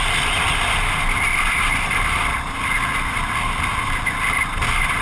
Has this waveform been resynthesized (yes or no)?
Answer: no